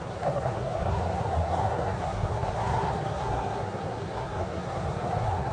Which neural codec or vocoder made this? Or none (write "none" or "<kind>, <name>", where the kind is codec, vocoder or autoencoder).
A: codec, SNAC